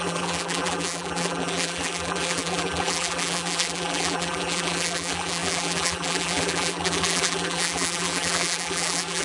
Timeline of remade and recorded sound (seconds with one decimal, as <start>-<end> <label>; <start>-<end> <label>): 0.0-9.2 remade